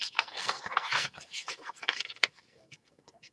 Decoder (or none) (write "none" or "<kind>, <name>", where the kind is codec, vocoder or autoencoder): codec, SNAC